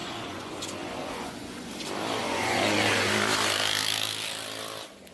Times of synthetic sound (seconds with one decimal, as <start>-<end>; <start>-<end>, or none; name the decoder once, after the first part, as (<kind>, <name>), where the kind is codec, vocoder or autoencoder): 0.0-1.7 (vocoder, Vocos); 2.2-3.1